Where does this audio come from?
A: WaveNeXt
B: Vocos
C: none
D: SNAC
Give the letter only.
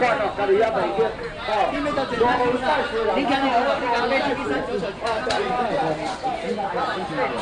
C